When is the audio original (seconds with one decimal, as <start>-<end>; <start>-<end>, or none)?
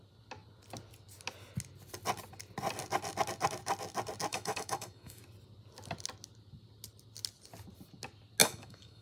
0.0-4.3; 5.2-8.4